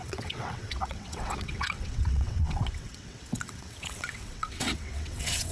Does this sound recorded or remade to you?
remade